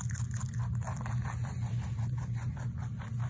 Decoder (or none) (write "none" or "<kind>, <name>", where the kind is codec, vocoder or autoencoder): none